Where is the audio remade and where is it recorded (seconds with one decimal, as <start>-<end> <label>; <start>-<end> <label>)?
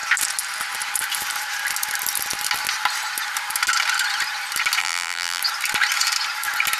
0.0-4.8 recorded; 4.8-5.4 remade; 5.4-6.8 recorded